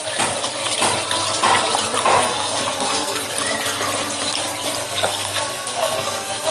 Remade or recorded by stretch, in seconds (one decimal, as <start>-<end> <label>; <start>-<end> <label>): 0.0-2.2 recorded; 2.2-3.2 remade; 3.2-4.8 recorded; 4.8-6.5 remade